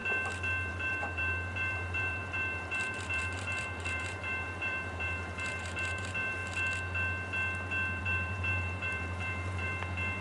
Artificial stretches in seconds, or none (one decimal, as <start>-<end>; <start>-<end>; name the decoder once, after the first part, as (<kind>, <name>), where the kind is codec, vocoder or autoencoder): 0.7-6.4 (vocoder, BigVGAN v2); 8.0-9.7

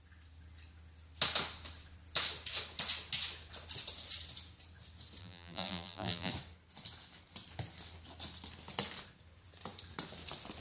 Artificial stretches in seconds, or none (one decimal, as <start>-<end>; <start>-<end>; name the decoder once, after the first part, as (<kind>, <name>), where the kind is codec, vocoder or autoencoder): 5.2-6.3 (vocoder, BigVGAN v2)